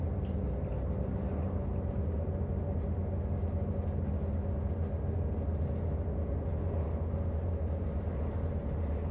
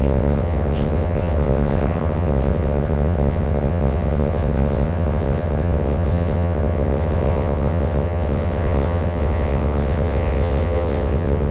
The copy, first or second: second